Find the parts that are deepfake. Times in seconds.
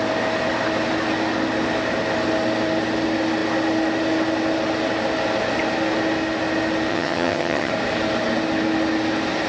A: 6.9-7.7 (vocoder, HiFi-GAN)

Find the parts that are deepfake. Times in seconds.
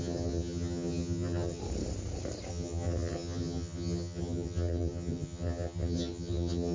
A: 0.0-1.6 (vocoder, HiFi-GAN); 2.5-6.7